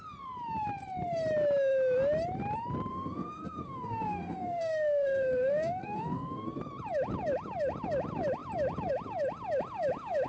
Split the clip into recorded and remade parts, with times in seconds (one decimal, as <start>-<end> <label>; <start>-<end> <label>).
0.0-2.9 recorded; 2.9-6.6 remade; 6.6-10.3 recorded